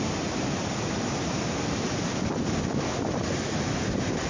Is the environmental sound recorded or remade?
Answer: recorded